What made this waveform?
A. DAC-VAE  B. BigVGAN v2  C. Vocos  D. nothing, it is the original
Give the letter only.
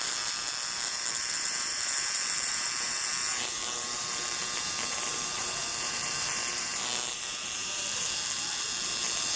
B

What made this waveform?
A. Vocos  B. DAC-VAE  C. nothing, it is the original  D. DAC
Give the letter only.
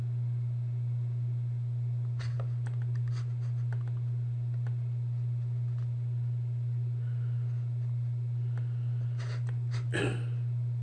C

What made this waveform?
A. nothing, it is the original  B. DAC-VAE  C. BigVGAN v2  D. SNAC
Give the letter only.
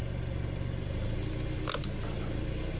A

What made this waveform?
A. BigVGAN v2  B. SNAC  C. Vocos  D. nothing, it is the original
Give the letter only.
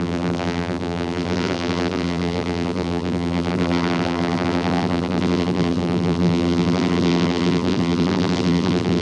A